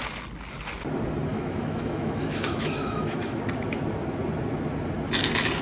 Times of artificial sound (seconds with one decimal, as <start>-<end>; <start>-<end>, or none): 1.3-3.4